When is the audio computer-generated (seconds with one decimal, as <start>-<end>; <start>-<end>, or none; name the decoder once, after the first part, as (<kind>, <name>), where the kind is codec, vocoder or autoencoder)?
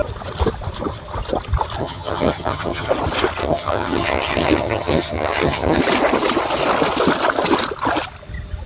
1.8-2.9 (vocoder, HiFi-GAN); 3.4-5.8